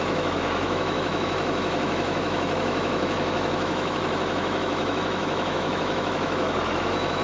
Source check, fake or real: fake